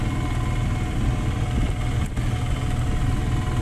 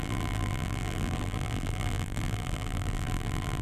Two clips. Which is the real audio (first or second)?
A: first